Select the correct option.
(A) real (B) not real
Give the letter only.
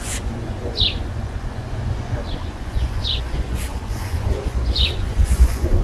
B